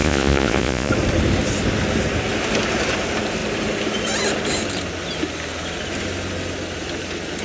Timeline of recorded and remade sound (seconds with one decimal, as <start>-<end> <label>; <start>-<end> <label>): 0.0-0.9 remade; 0.9-7.4 recorded